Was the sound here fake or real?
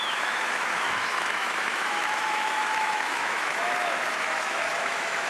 fake